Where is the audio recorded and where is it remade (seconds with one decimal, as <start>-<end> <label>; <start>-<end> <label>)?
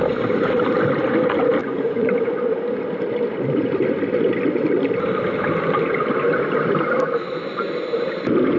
0.0-1.6 recorded; 1.6-2.3 remade; 2.3-8.6 recorded